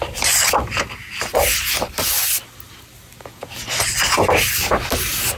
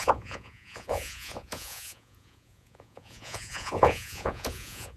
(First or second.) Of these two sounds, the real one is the first